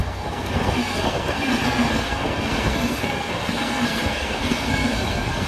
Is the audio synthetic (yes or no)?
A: yes